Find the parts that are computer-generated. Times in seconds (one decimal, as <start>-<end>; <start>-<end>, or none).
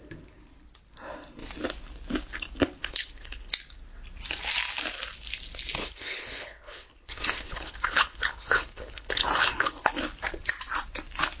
2.8-3.5; 5.8-9.9